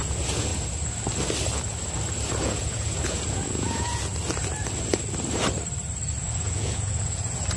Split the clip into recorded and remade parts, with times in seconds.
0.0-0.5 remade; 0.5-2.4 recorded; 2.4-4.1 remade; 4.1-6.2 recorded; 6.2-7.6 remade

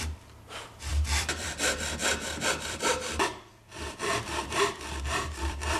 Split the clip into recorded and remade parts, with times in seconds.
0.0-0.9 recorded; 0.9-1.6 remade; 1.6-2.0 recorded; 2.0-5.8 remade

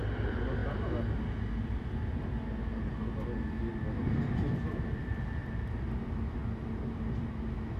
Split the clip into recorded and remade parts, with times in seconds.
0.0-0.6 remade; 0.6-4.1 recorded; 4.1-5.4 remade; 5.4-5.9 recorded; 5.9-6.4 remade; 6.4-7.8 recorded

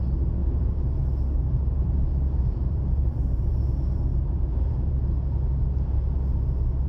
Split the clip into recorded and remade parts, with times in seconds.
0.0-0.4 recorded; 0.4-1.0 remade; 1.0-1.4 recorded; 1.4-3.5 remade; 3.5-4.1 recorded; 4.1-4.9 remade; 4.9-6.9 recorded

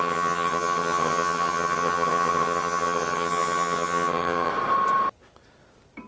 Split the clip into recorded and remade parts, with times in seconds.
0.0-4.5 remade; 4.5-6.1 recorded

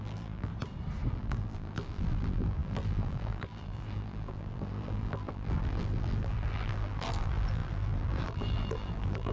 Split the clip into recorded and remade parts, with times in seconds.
0.0-0.5 remade; 0.5-1.1 recorded; 1.1-9.3 remade

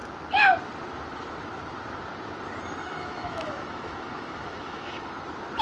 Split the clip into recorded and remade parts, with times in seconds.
0.0-2.8 recorded; 2.8-5.1 remade; 5.1-5.6 recorded

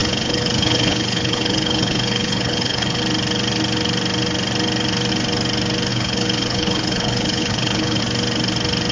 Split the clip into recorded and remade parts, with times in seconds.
0.0-3.0 remade; 3.0-5.9 recorded; 5.9-8.0 remade; 8.0-8.9 recorded